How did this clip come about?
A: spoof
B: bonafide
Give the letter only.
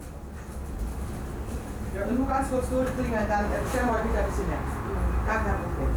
B